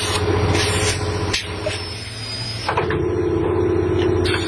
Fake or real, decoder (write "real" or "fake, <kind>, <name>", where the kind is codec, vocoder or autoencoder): real